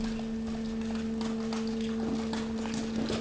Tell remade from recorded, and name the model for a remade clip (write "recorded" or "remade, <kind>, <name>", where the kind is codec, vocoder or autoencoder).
recorded